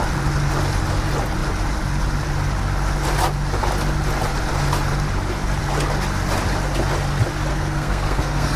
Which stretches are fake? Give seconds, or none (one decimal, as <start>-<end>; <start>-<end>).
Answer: 7.5-8.6